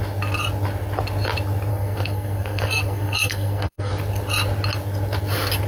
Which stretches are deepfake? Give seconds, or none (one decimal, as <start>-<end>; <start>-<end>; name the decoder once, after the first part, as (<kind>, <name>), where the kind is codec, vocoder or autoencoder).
1.7-3.9 (codec, SNAC)